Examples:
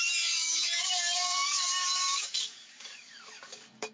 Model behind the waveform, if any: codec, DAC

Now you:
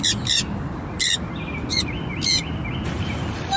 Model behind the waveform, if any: none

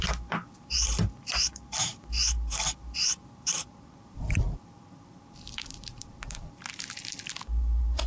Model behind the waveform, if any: vocoder, BigVGAN v2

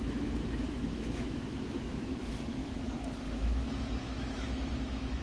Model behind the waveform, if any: autoencoder, DAC-VAE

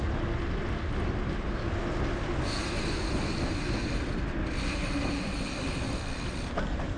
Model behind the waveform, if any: none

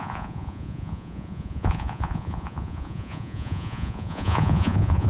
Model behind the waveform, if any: vocoder, Vocos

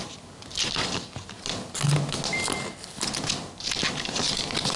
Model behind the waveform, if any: none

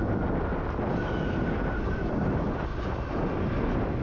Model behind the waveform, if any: none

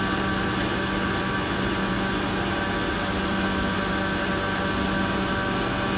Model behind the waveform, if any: none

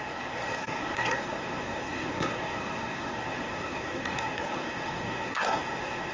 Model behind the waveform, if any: codec, SNAC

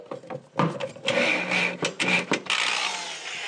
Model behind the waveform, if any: none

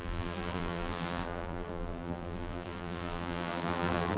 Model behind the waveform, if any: vocoder, BigVGAN v2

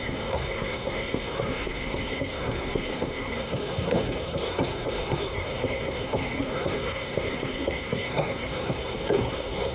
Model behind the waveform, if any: codec, SNAC